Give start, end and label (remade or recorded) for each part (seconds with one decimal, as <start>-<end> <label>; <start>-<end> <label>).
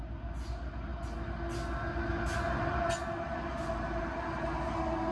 0.0-5.1 recorded